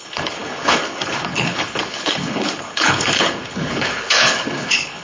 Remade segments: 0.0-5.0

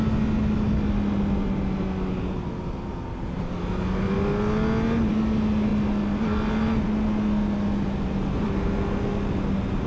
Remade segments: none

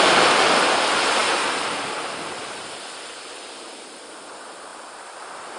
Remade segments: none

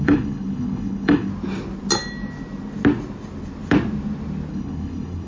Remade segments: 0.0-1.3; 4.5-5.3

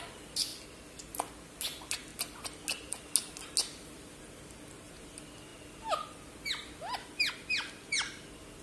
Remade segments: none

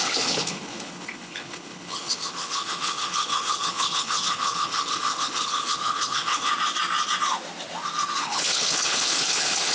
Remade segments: 0.0-6.5; 8.2-9.7